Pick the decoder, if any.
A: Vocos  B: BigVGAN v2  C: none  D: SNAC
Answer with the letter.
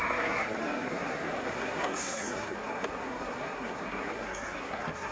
D